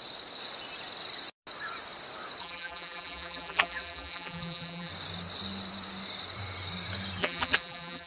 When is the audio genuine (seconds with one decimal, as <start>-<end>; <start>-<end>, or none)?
0.0-2.4; 4.9-7.2